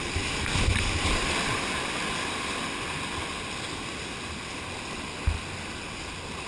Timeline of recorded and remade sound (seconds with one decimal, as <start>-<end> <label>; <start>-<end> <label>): 0.0-6.5 recorded